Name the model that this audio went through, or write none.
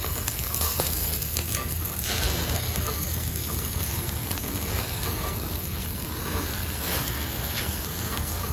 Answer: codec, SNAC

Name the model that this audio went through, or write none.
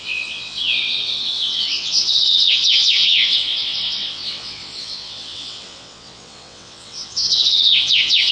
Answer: vocoder, WaveNeXt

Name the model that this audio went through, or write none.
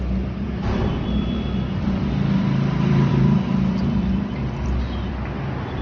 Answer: vocoder, BigVGAN v2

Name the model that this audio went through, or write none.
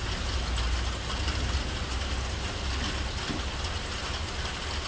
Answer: none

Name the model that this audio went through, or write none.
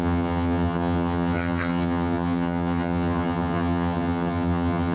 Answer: vocoder, HiFi-GAN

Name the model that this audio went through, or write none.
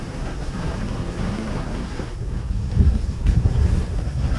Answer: codec, SNAC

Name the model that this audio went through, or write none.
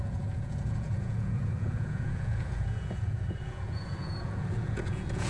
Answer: vocoder, Vocos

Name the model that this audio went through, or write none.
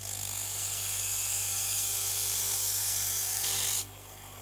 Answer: codec, SNAC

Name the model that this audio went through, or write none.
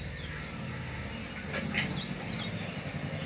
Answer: none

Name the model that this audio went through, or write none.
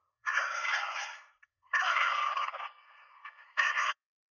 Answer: codec, SNAC